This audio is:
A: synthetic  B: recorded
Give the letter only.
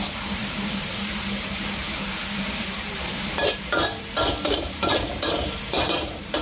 A